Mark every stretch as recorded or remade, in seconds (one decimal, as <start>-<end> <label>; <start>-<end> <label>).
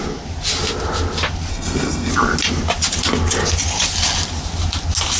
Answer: 0.0-1.5 recorded; 1.5-2.1 remade; 2.1-5.2 recorded